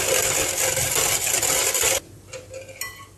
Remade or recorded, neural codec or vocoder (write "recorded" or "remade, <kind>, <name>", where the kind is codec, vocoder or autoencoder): recorded